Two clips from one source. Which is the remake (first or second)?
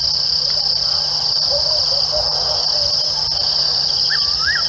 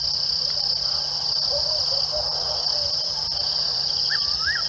second